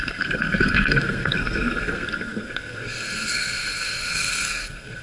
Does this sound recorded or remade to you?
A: remade